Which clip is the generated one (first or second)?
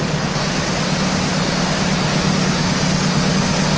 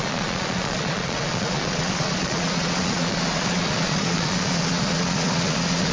second